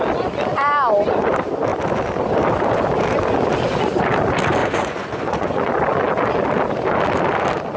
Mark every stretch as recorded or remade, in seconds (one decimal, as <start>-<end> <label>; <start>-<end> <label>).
0.0-4.6 recorded; 4.6-5.7 remade; 5.7-7.8 recorded